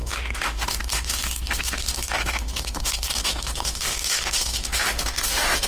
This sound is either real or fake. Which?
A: fake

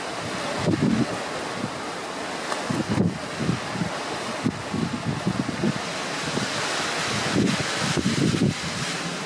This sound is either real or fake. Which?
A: real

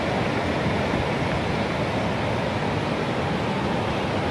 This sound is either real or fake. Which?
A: real